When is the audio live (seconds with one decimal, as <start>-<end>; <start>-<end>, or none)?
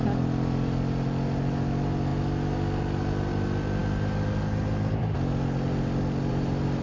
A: 0.0-6.8